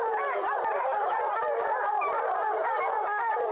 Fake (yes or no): no